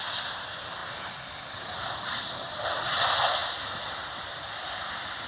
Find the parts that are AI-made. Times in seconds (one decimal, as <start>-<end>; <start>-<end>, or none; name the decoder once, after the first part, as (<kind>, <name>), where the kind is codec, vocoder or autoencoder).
none